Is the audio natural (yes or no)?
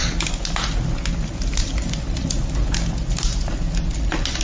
yes